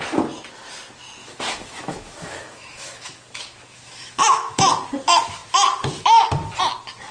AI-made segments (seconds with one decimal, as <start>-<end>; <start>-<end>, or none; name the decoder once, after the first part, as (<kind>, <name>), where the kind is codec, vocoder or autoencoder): 1.2-4.7 (autoencoder, DAC-VAE)